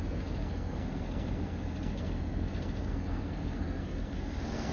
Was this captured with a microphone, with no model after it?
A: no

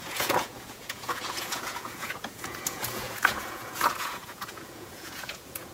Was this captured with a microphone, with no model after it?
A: no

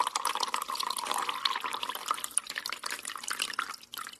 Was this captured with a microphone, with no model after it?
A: yes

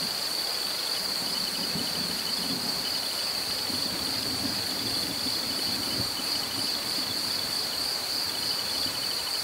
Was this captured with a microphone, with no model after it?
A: no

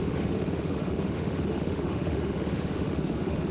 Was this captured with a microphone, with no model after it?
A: no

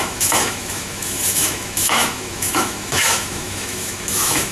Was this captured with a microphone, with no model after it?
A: no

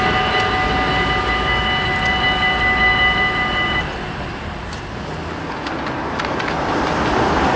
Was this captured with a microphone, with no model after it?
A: yes